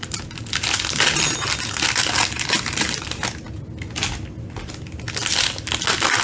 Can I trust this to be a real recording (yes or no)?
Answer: yes